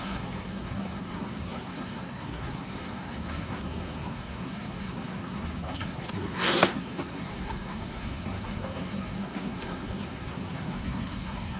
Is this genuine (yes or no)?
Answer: no